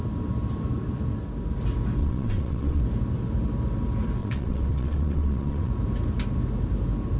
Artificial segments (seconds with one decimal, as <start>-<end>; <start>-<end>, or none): 2.0-2.8; 4.2-5.7